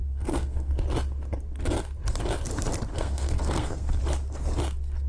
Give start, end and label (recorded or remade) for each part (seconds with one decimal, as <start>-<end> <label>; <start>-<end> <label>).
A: 0.0-0.7 remade; 0.7-2.9 recorded; 2.9-4.0 remade; 4.0-5.1 recorded